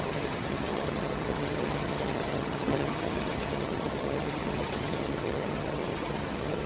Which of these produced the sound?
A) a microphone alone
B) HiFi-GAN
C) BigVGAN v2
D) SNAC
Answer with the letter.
B